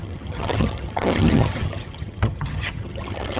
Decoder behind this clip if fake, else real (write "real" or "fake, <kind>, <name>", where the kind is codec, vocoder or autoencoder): fake, vocoder, HiFi-GAN